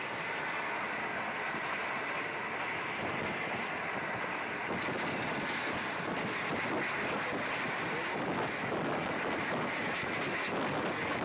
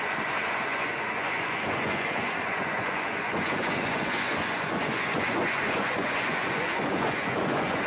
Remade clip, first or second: second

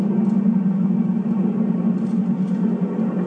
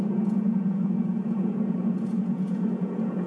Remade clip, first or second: second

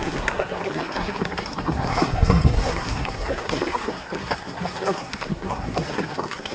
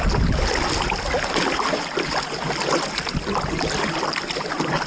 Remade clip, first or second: first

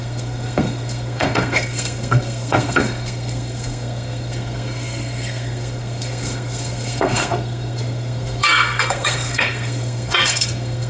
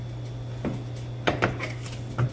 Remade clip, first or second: first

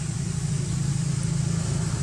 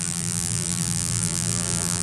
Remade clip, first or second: second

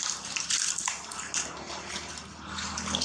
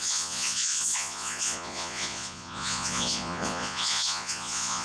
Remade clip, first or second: second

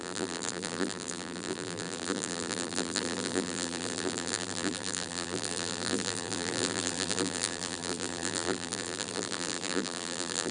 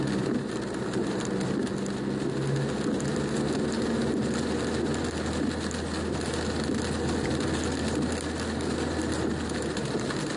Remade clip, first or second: first